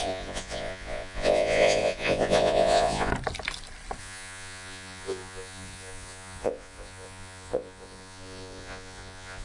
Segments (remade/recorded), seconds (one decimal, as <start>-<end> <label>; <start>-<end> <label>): 0.0-3.1 remade; 3.1-4.0 recorded; 4.0-9.4 remade